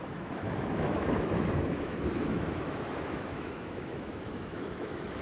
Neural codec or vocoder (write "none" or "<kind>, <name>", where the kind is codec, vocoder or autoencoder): autoencoder, DAC-VAE